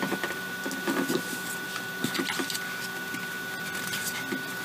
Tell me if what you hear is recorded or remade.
recorded